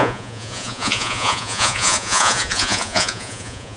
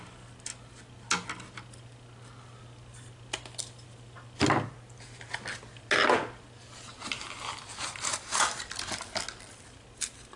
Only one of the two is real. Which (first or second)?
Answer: second